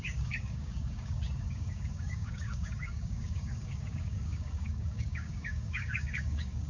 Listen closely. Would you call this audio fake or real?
fake